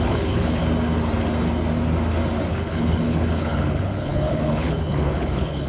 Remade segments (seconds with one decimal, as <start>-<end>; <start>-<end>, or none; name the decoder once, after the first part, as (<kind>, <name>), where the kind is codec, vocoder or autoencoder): 0.0-0.6 (codec, HILCodec); 2.5-5.7